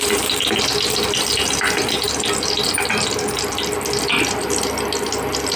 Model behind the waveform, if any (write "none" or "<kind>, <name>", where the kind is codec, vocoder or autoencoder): none